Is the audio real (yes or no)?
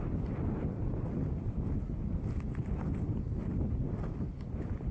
yes